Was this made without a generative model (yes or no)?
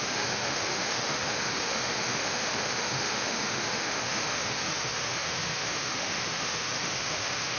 no